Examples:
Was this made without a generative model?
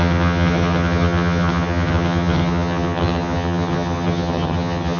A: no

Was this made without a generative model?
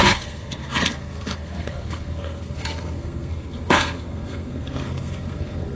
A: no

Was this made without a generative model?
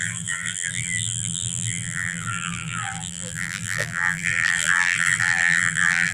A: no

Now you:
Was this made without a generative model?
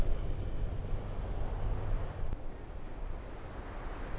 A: yes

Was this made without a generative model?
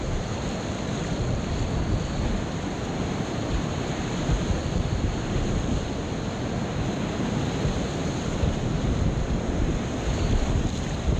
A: yes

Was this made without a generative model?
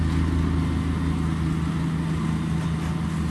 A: yes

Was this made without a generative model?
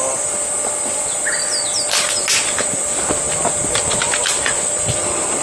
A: yes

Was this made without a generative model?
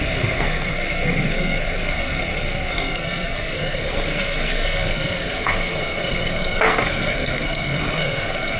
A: no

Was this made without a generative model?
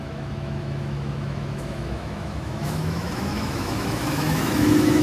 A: no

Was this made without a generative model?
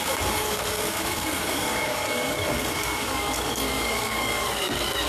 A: no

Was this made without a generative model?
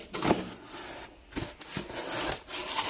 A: yes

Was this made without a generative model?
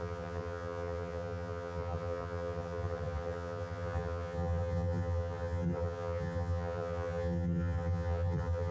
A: no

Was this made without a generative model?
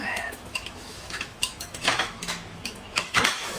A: no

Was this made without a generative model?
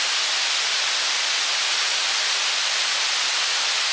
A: yes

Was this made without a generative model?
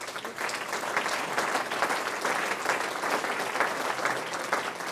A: yes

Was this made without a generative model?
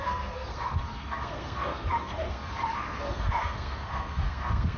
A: no